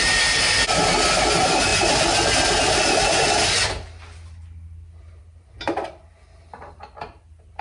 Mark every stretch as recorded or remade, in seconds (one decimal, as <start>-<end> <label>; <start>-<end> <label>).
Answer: 0.0-7.6 recorded